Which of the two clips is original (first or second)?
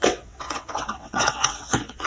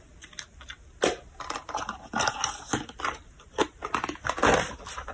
second